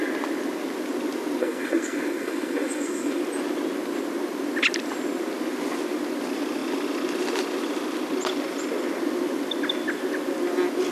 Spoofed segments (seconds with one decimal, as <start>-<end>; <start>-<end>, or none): 1.4-3.2